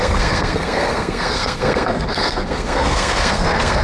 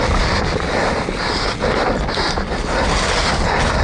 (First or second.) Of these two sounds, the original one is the second